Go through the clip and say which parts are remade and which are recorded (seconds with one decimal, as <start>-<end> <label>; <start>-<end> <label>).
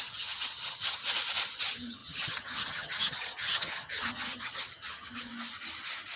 0.0-1.0 remade; 1.0-1.6 recorded; 1.6-5.3 remade; 5.3-6.2 recorded